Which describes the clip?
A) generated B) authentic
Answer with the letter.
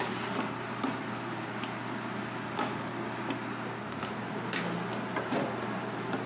B